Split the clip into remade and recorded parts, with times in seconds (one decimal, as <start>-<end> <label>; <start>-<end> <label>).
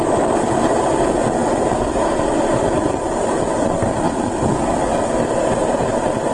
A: 0.0-6.3 recorded